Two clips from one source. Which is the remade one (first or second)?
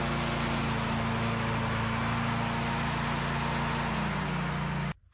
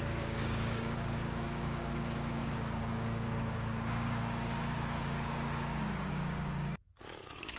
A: second